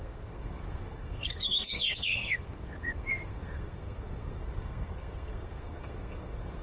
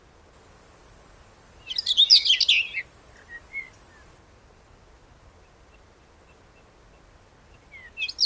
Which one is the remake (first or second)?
first